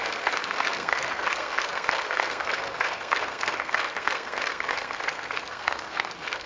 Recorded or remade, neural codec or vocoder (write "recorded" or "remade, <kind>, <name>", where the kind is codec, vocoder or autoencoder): remade, codec, SNAC